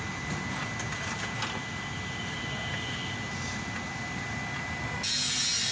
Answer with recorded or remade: recorded